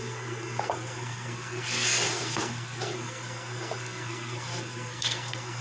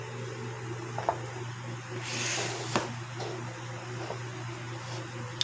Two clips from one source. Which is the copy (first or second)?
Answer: first